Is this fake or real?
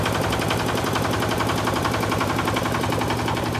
fake